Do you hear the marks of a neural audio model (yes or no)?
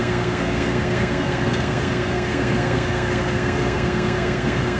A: yes